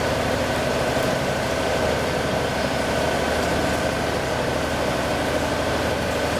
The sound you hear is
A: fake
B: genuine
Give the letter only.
A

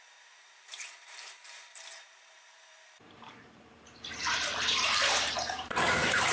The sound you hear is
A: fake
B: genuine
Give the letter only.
A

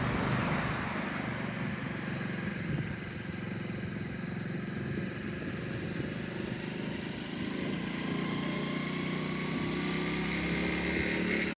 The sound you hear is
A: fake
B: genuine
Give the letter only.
B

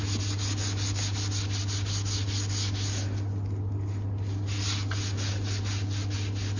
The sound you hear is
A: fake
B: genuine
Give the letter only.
B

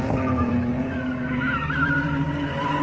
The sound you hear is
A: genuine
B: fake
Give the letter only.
B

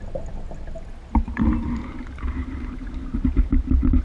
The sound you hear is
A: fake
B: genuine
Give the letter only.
B